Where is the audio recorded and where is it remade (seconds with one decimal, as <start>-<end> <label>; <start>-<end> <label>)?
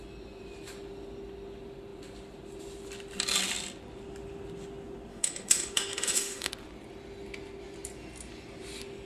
0.0-5.1 recorded; 5.1-6.5 remade; 6.5-9.1 recorded